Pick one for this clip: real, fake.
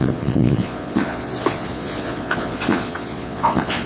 fake